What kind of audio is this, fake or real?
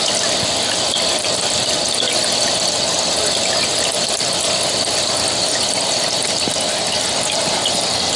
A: real